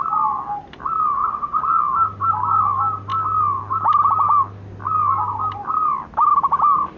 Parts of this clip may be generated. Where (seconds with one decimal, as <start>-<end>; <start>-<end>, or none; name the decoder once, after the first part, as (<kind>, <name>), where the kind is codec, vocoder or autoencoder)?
none